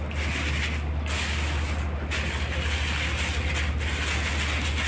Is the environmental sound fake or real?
real